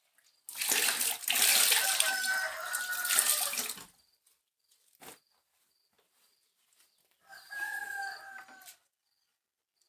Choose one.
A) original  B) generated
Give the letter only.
A